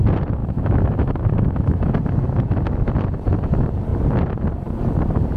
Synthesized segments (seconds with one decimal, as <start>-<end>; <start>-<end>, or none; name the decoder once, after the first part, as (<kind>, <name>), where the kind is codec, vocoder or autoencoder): 0.4-2.0 (autoencoder, DAC-VAE)